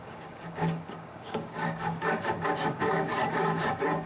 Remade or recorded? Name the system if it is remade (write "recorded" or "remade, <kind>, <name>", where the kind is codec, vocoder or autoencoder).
remade, codec, DAC